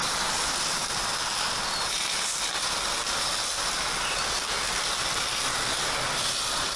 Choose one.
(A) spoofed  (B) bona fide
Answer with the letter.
B